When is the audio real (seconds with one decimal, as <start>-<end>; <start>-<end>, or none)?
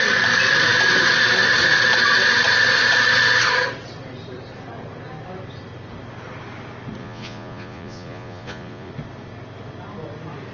0.0-7.0; 8.9-10.5